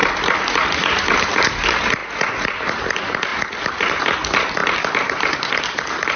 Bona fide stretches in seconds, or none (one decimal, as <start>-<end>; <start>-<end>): 0.0-6.2